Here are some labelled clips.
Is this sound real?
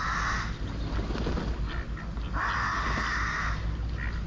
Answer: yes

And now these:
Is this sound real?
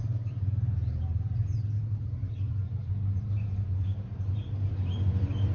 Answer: no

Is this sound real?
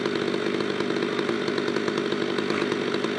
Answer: yes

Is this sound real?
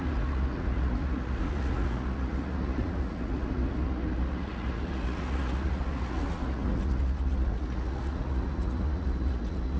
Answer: no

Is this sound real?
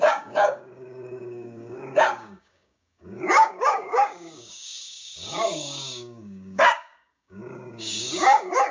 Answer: no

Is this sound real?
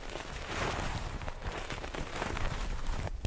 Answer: no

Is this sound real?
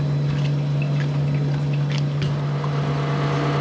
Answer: yes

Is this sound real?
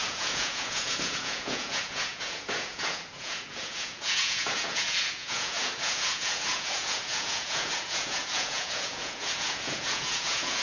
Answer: no